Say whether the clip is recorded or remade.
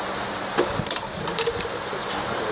remade